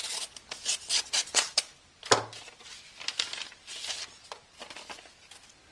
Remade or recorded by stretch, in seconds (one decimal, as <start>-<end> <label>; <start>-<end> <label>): 0.0-5.7 recorded

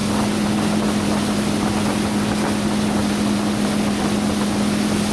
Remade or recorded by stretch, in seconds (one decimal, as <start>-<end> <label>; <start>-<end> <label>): 0.0-5.1 recorded